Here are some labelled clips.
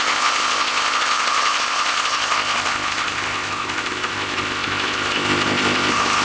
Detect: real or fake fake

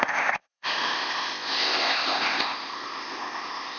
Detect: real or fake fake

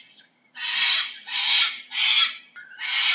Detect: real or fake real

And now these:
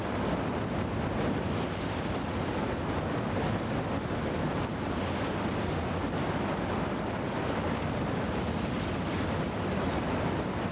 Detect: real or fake real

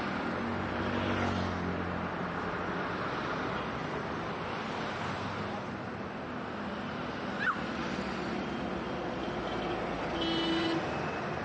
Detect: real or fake real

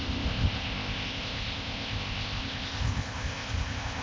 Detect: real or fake fake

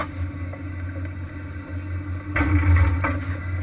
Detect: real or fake real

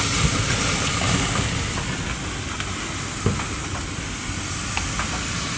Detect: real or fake real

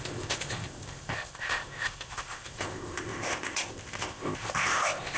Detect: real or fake fake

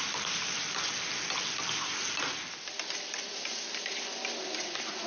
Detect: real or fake real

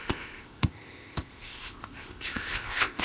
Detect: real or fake fake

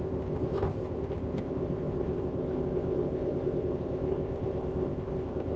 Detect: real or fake fake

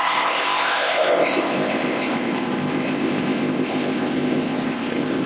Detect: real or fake fake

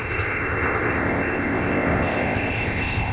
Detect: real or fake fake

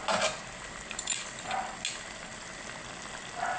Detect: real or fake real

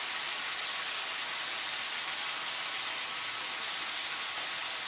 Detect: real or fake real